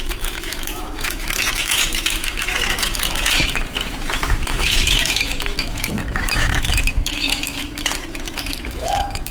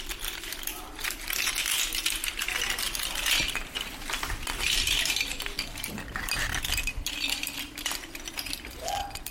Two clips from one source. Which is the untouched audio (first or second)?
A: second